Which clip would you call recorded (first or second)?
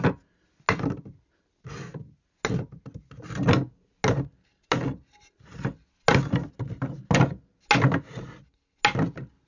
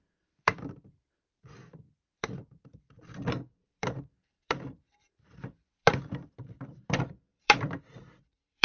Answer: first